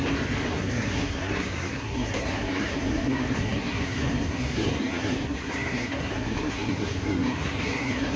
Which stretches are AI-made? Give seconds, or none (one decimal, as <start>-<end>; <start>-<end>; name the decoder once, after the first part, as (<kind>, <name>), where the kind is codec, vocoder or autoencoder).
0.5-8.2 (codec, SNAC)

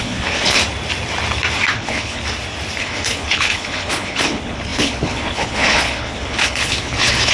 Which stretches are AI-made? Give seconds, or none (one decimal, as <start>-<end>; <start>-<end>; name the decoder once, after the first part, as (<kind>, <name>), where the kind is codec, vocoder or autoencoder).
0.0-0.6 (codec, HILCodec); 1.7-2.2; 2.8-7.3

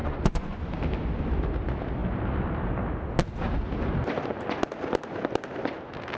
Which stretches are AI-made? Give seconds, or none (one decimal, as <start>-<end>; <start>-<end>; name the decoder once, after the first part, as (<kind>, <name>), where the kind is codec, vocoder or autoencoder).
0.0-0.6 (vocoder, Vocos)

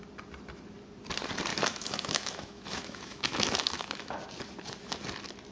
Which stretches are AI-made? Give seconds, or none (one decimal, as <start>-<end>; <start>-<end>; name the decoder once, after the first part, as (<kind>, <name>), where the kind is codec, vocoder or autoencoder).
1.5-4.1 (autoencoder, DAC-VAE)